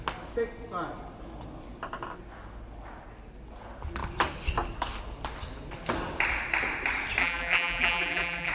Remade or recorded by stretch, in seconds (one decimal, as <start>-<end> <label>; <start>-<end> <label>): 0.0-7.2 recorded; 7.2-8.5 remade